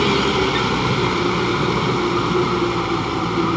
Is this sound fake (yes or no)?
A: yes